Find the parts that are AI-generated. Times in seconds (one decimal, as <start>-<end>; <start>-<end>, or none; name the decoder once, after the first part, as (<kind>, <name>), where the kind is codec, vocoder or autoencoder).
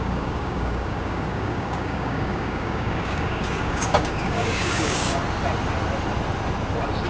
0.0-5.2 (codec, DAC)